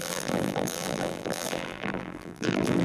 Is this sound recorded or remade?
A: remade